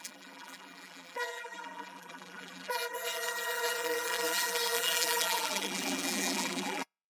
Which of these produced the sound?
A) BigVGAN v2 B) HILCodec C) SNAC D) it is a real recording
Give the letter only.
A